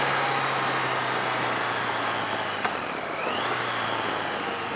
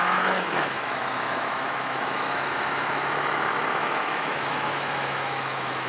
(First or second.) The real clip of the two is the first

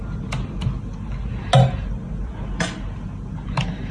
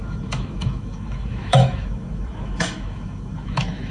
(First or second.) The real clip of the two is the first